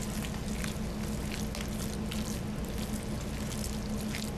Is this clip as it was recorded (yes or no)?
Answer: yes